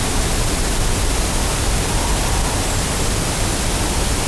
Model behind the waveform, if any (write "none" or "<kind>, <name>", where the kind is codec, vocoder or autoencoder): none